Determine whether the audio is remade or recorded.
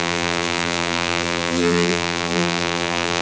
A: remade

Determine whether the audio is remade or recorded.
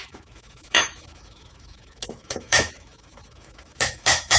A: remade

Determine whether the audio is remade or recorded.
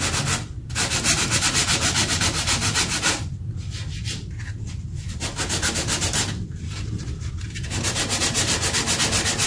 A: recorded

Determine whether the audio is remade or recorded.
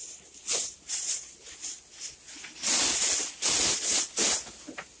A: recorded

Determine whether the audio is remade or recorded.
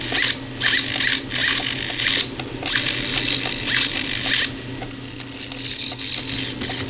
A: recorded